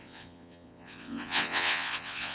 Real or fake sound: fake